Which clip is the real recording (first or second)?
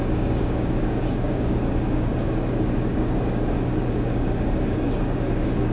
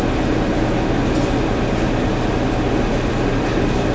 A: second